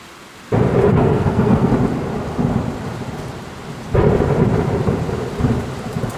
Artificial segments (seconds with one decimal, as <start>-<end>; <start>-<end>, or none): 0.9-1.7